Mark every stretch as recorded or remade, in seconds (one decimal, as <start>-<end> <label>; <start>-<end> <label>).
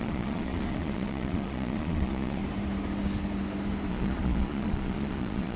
0.0-2.4 remade; 2.4-3.9 recorded; 3.9-5.6 remade